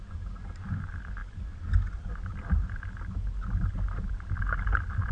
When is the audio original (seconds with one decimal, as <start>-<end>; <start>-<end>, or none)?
0.0-5.1